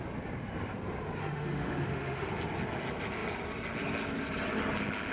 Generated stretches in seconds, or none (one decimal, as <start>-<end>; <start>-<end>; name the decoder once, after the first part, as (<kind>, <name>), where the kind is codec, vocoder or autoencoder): 1.2-2.3 (autoencoder, DAC-VAE)